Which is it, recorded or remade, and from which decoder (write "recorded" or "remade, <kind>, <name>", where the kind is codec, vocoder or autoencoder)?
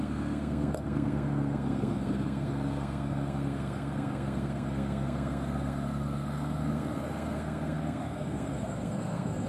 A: remade, codec, SNAC